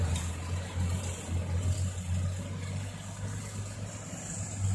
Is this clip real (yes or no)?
yes